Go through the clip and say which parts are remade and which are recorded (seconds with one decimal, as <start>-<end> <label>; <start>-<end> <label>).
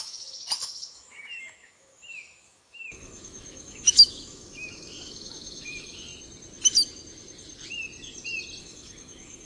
0.0-6.1 remade; 6.1-8.6 recorded; 8.6-9.5 remade